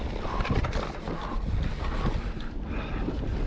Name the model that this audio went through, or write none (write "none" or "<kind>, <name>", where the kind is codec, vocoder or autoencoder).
none